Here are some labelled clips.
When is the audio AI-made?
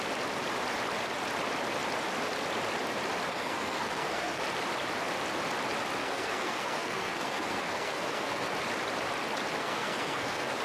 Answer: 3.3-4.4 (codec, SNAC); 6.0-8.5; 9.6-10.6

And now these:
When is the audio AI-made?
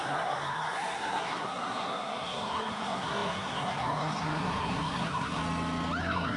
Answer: 0.0-5.4 (codec, SNAC); 6.0-6.4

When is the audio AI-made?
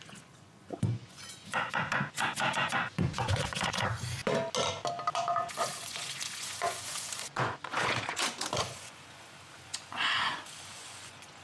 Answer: 0.0-4.2 (vocoder, Vocos); 5.1-11.4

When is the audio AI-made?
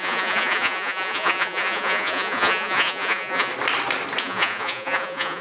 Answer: 0.0-3.5 (vocoder, Vocos); 4.2-5.4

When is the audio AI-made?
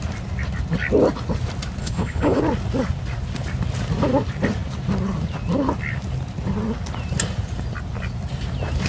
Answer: 1.8-2.4 (codec, HILCodec)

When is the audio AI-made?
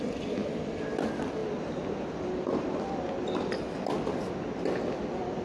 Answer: none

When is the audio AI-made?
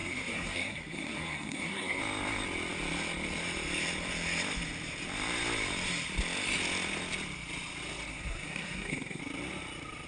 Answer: 0.0-2.0 (codec, SNAC); 8.1-9.2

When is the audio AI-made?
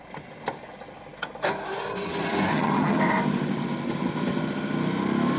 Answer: 2.5-3.0 (vocoder, HiFi-GAN)